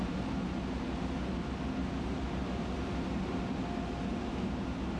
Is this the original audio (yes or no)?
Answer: yes